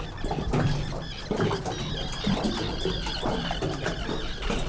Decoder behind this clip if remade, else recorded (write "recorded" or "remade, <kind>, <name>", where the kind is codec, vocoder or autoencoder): recorded